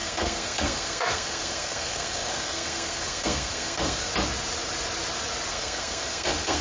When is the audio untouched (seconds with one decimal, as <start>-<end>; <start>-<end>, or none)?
4.1-5.5